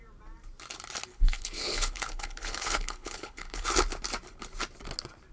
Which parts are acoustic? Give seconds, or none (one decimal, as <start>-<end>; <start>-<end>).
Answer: 0.0-1.1; 3.7-5.3